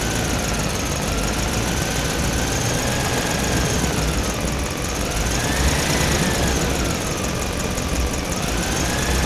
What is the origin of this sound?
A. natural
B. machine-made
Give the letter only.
A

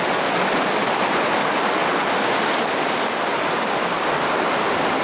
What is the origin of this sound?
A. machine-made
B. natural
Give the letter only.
B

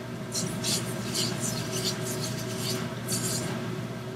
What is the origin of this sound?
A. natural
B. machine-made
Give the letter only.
A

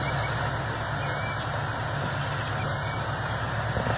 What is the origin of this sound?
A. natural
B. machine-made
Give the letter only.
A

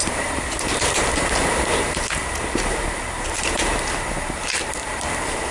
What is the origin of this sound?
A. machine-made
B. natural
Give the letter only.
A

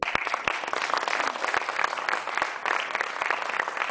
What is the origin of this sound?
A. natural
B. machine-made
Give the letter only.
A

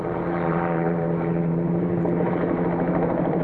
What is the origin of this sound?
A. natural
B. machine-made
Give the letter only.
B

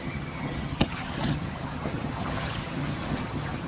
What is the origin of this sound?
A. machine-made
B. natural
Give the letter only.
A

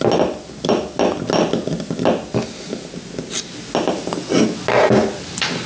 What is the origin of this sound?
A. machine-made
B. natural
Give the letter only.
B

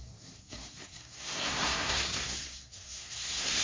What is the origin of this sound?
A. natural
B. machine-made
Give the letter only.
B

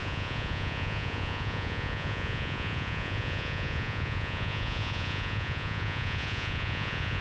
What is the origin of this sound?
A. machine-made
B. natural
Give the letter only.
A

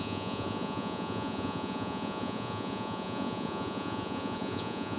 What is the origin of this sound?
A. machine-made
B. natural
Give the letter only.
A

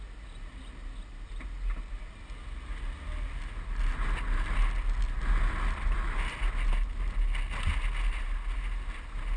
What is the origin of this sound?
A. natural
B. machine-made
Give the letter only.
A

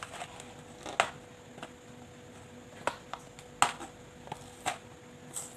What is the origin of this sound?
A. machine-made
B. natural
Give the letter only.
B